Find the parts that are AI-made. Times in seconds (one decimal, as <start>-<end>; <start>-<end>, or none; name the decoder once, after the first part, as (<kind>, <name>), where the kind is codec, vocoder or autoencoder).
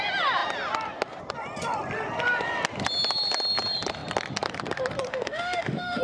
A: 5.1-6.0 (autoencoder, DAC-VAE)